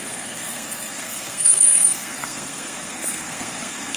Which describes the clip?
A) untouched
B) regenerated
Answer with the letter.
B